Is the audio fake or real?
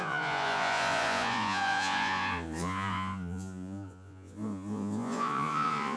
fake